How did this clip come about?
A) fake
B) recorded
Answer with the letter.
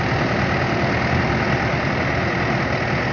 B